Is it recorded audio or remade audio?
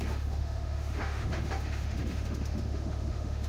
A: remade